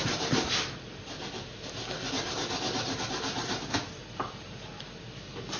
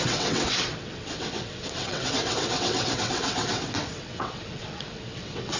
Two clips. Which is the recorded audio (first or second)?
first